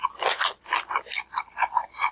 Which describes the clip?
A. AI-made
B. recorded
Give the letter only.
B